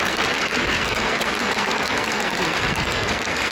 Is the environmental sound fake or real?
fake